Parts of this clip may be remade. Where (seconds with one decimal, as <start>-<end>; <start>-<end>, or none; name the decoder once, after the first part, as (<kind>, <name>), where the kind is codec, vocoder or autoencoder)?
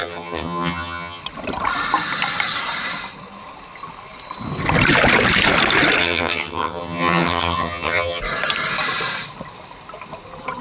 0.0-1.2 (vocoder, HiFi-GAN); 6.0-8.2